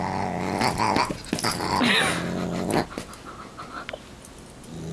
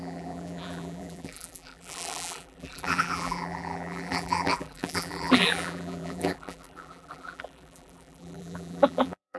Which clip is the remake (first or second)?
second